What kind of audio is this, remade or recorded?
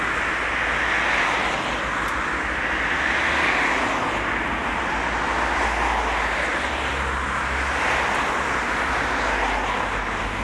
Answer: recorded